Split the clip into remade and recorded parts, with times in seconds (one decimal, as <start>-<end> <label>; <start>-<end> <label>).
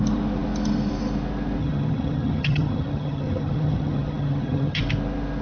0.0-1.6 recorded; 1.6-4.8 remade; 4.8-5.4 recorded